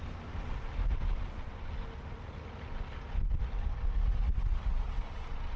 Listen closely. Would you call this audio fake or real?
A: real